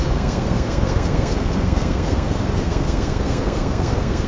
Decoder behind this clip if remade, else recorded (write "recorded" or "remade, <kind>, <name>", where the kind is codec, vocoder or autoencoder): remade, codec, SNAC